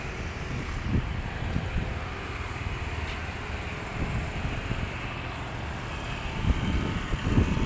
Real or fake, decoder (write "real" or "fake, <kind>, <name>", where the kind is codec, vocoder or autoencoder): real